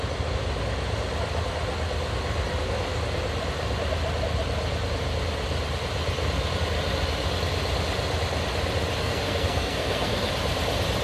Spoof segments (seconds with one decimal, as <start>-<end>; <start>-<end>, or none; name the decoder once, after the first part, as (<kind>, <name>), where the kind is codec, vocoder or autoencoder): 9.0-10.3 (codec, SNAC)